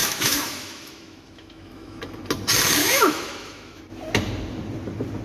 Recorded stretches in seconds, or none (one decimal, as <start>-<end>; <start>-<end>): 2.0-2.8; 3.8-5.2